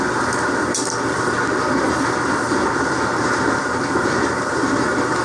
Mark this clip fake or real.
fake